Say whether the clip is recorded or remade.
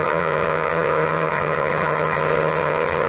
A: remade